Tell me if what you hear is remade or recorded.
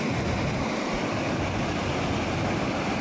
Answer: recorded